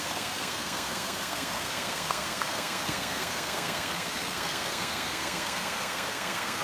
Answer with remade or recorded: remade